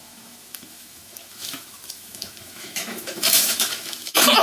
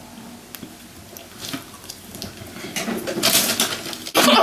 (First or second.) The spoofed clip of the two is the first